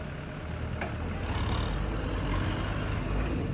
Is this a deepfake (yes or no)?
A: no